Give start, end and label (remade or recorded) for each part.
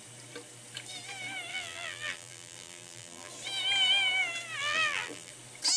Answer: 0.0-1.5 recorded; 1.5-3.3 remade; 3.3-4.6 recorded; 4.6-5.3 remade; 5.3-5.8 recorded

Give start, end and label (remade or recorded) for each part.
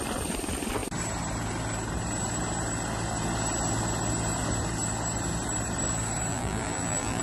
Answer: 0.0-6.3 recorded; 6.3-7.2 remade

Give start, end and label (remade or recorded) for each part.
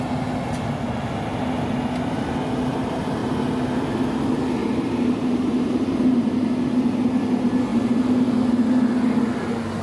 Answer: 0.0-4.6 recorded; 4.6-6.5 remade; 6.5-9.8 recorded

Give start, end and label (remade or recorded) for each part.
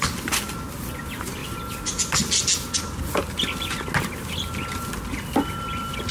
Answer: 0.0-6.1 recorded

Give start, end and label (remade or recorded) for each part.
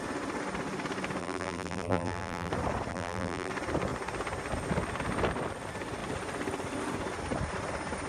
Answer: 0.0-1.2 recorded; 1.2-2.5 remade; 2.5-2.9 recorded; 2.9-3.5 remade; 3.5-8.1 recorded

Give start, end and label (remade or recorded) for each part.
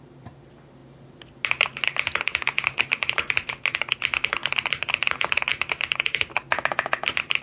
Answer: 0.0-5.5 recorded; 5.5-6.7 remade; 6.7-7.4 recorded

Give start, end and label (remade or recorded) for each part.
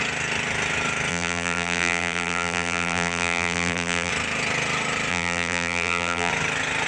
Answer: 0.0-1.1 recorded; 1.1-4.1 remade; 4.1-5.1 recorded; 5.1-6.3 remade; 6.3-6.9 recorded